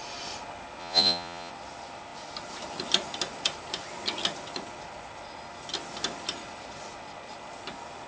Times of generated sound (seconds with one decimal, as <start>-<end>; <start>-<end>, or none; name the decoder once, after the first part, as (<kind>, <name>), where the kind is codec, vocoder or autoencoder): 0.8-1.5 (vocoder, Vocos)